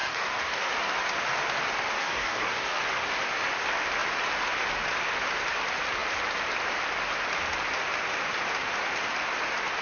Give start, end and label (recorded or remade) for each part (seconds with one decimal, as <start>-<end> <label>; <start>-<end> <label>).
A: 0.0-0.7 remade; 0.7-2.0 recorded; 2.0-2.8 remade; 2.8-9.8 recorded